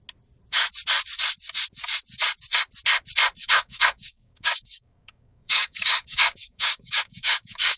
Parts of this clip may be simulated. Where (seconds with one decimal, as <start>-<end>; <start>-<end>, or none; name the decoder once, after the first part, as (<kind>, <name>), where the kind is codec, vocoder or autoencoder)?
3.4-7.8 (codec, DAC)